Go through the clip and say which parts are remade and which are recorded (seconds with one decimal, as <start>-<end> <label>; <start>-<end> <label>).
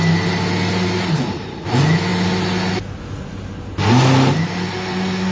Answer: 0.0-5.3 recorded